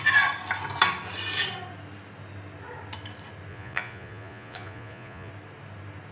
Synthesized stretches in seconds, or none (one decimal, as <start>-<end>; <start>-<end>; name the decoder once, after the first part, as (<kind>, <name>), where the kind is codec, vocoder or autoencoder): 3.5-5.3 (vocoder, Vocos)